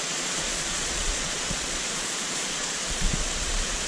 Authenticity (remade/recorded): remade